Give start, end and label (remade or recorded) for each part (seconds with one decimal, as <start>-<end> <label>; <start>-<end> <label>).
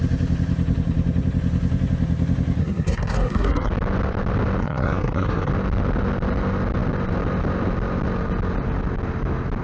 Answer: 0.0-2.6 recorded; 2.6-3.7 remade; 3.7-4.6 recorded; 4.6-5.5 remade; 5.5-9.6 recorded